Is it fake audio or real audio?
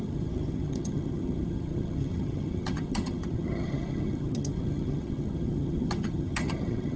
fake